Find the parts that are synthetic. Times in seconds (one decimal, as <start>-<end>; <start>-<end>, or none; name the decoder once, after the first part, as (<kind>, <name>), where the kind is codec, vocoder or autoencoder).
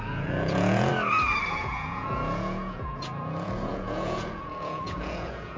0.0-0.9 (vocoder, Vocos); 1.5-5.6